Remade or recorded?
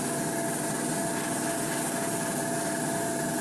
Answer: recorded